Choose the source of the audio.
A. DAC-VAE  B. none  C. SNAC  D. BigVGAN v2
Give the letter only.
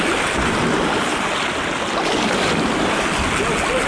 B